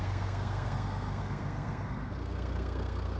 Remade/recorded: remade